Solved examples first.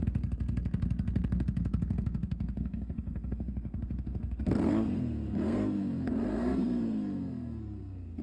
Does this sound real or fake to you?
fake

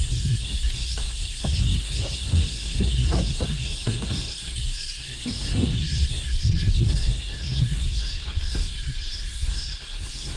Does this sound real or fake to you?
fake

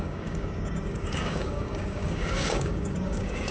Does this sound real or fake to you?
fake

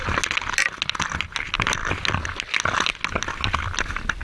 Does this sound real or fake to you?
real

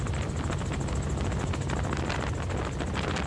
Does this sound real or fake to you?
real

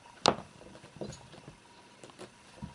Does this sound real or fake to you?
real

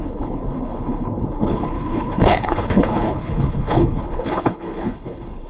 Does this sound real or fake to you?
fake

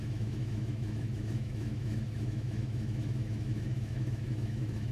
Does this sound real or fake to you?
fake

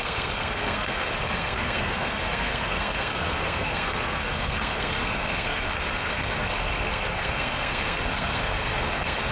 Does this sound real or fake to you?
fake